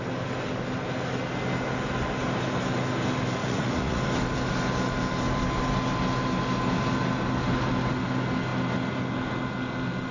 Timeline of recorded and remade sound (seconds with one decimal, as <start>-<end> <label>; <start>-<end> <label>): 0.0-3.4 recorded; 3.4-4.0 remade; 4.0-10.1 recorded